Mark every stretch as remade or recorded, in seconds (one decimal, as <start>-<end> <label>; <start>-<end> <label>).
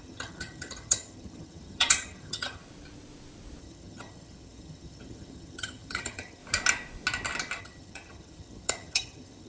0.0-2.6 remade; 2.6-3.6 recorded; 3.6-6.4 remade; 6.4-7.6 recorded; 7.6-9.5 remade